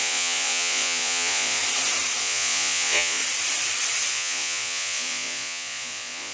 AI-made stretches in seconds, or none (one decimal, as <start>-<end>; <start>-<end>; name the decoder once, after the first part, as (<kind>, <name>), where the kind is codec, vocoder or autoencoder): 0.0-1.6 (vocoder, Vocos); 2.2-3.2; 4.1-6.3